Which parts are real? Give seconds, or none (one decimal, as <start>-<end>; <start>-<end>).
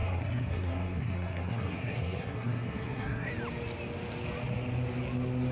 3.3-5.5